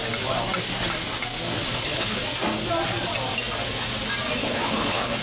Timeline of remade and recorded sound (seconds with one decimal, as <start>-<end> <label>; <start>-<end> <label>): 0.0-1.7 recorded; 1.7-2.2 remade; 2.2-4.4 recorded; 4.4-5.2 remade